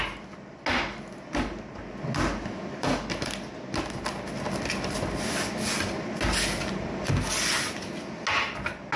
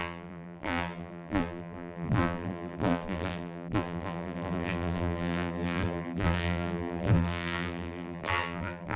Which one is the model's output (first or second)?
second